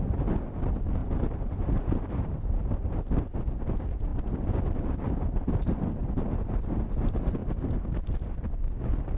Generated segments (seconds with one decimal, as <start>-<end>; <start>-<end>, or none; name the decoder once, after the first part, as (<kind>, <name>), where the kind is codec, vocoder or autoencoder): 1.0-2.3 (vocoder, BigVGAN v2)